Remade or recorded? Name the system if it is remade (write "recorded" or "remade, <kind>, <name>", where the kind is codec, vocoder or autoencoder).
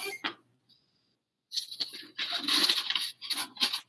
remade, vocoder, Vocos